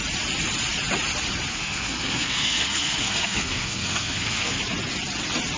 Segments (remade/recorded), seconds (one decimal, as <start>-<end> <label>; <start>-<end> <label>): 0.0-1.5 recorded; 1.5-4.6 remade; 4.6-5.6 recorded